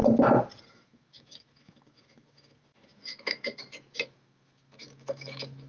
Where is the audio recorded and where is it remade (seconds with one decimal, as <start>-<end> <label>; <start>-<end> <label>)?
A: 0.0-0.7 recorded; 0.7-5.7 remade